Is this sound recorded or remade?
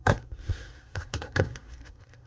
remade